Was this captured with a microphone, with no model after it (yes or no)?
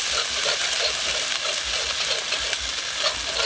yes